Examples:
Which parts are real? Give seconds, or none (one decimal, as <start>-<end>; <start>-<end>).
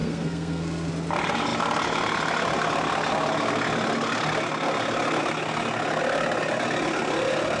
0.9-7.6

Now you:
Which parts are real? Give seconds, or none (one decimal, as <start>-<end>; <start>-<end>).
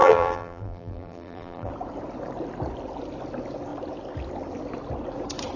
1.7-5.6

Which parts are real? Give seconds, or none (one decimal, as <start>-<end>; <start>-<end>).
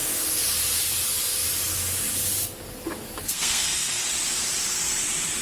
0.0-3.2; 4.0-5.4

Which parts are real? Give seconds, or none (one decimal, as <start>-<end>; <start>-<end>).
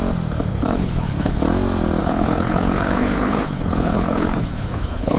0.0-0.5; 1.4-2.0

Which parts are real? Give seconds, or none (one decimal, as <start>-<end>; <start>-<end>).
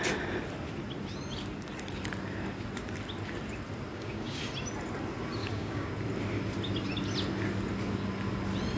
0.0-3.9; 4.4-5.4; 5.9-8.8